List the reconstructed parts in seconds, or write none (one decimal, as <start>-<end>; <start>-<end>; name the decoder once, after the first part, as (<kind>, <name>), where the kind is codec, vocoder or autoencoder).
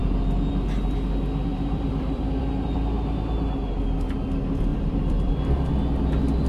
1.5-3.2 (vocoder, BigVGAN v2); 4.7-5.3